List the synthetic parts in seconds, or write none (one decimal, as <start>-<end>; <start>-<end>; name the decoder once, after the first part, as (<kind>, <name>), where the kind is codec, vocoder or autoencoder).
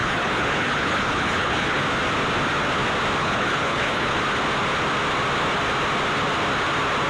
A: 0.0-1.8 (codec, HILCodec); 3.2-4.2